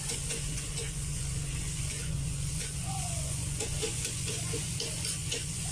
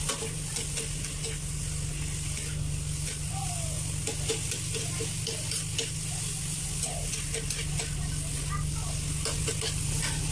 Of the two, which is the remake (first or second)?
first